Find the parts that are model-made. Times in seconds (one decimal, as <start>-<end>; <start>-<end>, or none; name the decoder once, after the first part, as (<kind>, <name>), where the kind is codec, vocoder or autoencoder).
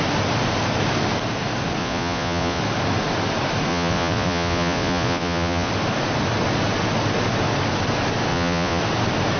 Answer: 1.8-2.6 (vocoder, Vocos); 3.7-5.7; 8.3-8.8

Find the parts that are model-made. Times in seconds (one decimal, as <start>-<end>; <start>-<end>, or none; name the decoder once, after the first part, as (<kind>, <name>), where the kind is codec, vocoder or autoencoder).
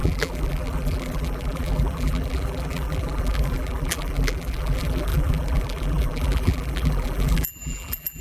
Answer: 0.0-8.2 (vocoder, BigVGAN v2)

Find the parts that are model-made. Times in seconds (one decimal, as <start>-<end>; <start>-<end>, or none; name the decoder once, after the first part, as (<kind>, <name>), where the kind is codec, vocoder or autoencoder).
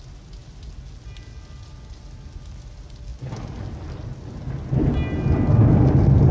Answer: none